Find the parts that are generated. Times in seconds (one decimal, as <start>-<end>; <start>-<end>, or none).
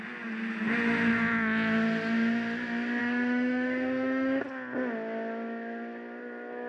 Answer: 3.0-4.4